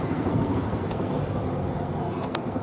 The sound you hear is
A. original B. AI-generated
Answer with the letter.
B